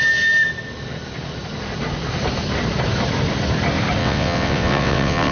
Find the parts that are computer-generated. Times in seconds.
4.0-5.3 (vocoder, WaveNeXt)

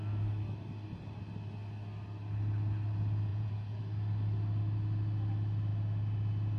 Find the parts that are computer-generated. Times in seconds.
3.3-3.8 (vocoder, Vocos)

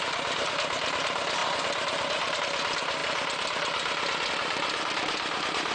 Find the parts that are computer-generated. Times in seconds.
0.0-1.4 (vocoder, BigVGAN v2); 2.4-3.0; 4.3-5.7

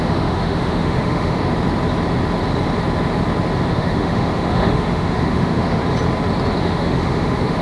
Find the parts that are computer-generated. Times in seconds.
0.0-1.5 (autoencoder, DAC-VAE); 3.7-5.8; 6.6-7.6

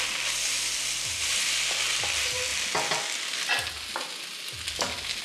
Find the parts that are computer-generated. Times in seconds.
none

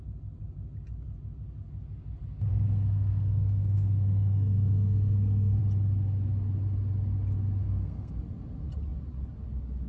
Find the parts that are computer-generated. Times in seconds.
2.5-5.6 (codec, SNAC); 7.6-8.1